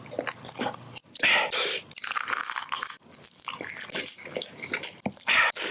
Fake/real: real